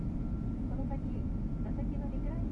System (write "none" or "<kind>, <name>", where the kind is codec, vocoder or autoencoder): none